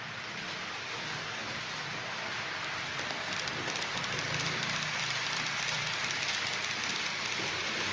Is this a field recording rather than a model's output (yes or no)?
no